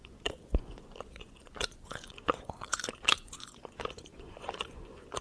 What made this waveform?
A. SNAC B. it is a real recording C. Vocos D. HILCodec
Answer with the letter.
C